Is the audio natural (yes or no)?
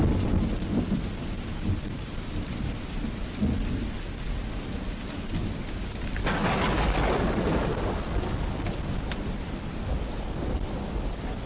yes